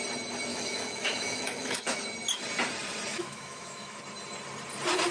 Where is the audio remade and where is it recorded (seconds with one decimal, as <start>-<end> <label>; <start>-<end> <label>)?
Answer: 0.0-0.5 recorded; 0.5-2.0 remade; 2.0-3.1 recorded; 3.1-4.0 remade; 4.0-5.1 recorded